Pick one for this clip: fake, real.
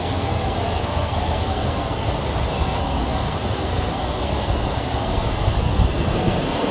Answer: fake